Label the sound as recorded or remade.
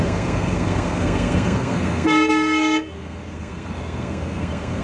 remade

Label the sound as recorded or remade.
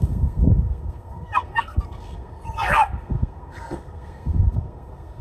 remade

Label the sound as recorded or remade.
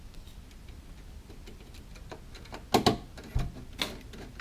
recorded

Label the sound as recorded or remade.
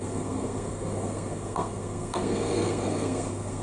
remade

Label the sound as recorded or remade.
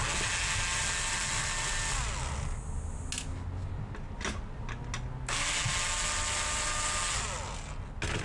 recorded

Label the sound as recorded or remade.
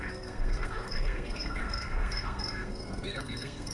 remade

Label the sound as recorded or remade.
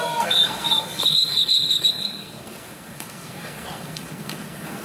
remade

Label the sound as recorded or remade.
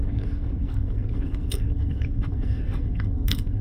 remade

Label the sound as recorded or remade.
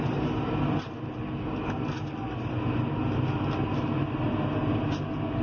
recorded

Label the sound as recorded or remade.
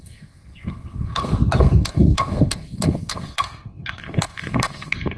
remade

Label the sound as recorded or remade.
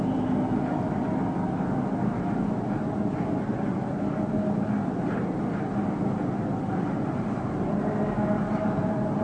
recorded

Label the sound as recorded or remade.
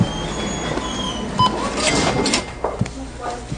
recorded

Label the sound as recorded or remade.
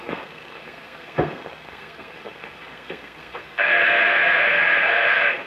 remade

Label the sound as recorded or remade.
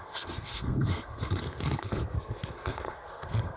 remade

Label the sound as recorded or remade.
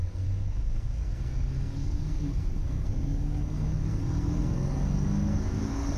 remade